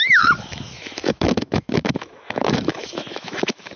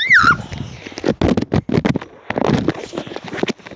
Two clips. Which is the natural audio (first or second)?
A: second